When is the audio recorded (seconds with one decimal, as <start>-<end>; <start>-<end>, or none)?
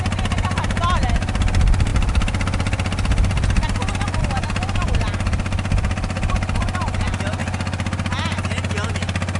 0.0-9.4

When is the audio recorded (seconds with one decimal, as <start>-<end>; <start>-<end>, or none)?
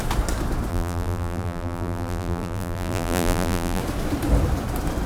0.0-0.7; 3.8-5.1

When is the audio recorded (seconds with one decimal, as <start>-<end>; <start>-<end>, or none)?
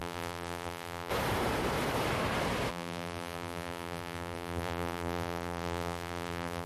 1.1-2.7